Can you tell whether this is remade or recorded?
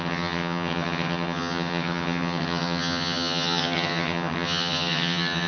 remade